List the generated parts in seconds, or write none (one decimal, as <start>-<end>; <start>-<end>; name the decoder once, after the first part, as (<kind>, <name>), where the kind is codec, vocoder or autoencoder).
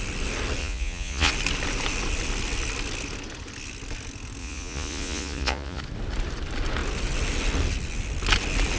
0.6-1.3 (vocoder, Vocos); 4.4-5.8